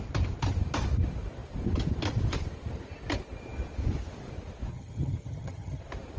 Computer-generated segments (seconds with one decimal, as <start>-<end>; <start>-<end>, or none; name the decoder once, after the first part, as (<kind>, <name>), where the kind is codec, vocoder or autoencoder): 4.7-5.8 (vocoder, HiFi-GAN)